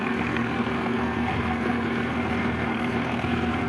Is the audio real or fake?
fake